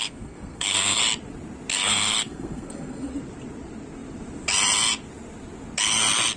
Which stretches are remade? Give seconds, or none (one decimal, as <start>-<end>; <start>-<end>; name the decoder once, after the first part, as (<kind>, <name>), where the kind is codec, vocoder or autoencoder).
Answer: 0.0-1.0 (codec, SNAC); 1.7-3.1